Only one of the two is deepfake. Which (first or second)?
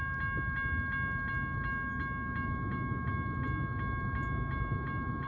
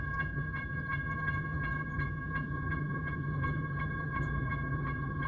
second